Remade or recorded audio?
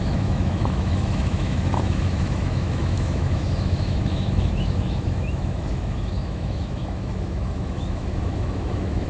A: remade